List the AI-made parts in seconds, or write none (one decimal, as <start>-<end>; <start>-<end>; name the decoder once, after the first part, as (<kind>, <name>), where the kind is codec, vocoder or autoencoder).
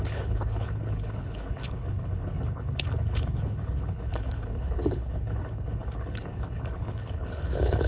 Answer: 0.0-7.9 (codec, HILCodec)